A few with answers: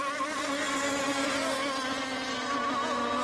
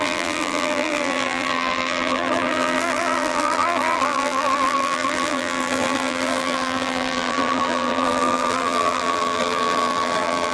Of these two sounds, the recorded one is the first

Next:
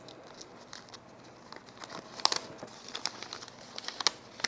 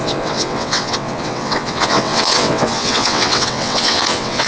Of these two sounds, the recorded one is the first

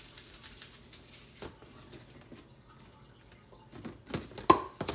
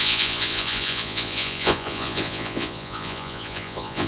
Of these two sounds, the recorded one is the first